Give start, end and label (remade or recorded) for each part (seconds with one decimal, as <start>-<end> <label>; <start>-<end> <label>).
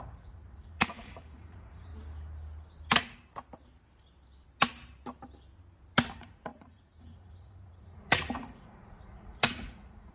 0.0-1.9 remade; 1.9-6.1 recorded; 6.1-10.1 remade